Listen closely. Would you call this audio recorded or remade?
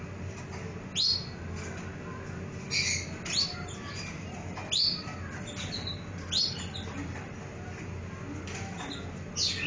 recorded